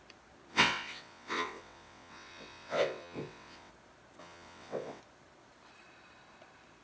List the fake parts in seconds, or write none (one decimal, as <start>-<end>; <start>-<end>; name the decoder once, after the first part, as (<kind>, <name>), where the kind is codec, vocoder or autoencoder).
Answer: 0.5-3.7 (vocoder, WaveNeXt); 4.2-5.0